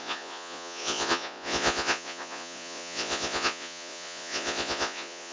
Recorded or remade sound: remade